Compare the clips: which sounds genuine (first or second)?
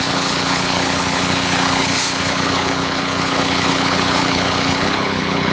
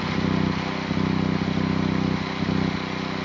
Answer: second